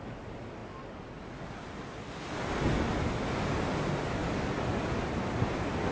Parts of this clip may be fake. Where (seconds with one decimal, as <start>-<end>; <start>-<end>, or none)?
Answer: none

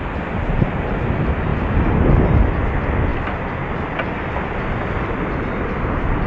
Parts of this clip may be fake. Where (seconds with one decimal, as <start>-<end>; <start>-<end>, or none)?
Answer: none

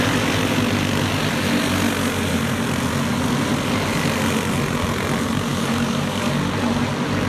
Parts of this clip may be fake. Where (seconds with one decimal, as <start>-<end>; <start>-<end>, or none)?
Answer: 5.5-6.3

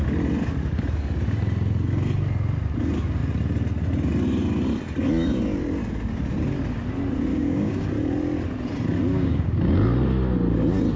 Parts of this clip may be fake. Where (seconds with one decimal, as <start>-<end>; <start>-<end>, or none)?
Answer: 7.3-7.9; 9.1-9.7